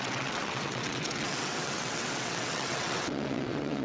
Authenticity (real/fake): fake